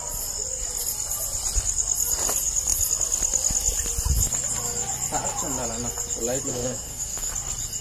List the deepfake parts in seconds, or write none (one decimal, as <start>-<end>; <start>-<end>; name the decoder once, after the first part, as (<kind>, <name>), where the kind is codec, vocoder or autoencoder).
6.5-7.3 (codec, SNAC)